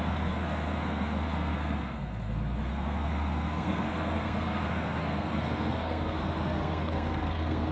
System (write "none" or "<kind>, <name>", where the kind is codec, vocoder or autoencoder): codec, SNAC